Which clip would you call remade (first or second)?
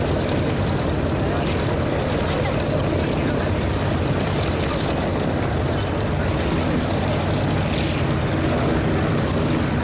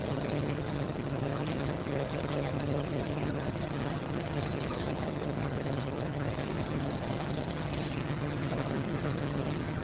second